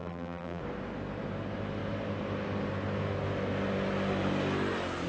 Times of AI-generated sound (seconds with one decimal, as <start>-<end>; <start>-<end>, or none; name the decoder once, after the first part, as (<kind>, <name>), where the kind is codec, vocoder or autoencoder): 0.0-0.6 (vocoder, BigVGAN v2)